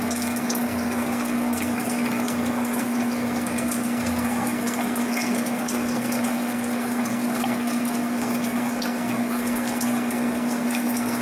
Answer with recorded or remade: remade